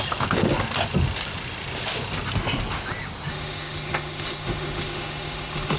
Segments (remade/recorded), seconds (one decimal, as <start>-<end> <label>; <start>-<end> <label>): 0.0-3.3 recorded; 3.3-5.8 remade